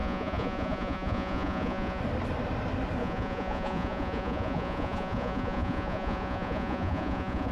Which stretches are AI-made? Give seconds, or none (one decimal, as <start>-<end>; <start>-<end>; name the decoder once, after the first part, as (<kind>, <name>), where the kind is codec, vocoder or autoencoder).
0.0-2.0 (vocoder, Vocos); 3.0-7.5